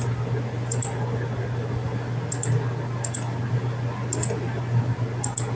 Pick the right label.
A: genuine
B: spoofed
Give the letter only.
A